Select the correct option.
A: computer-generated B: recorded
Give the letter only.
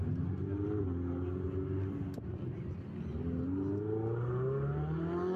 B